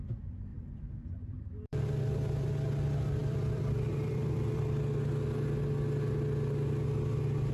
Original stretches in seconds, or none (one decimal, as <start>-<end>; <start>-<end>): 0.0-0.5; 2.5-3.2; 4.6-7.5